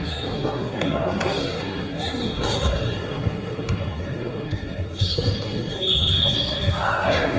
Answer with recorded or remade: remade